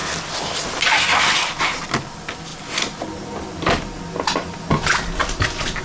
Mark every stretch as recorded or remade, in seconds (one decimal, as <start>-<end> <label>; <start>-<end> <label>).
0.0-5.8 recorded